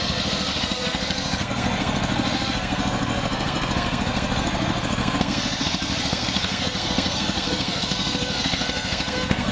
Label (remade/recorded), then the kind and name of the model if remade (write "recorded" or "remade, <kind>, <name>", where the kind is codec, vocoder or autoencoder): remade, codec, SNAC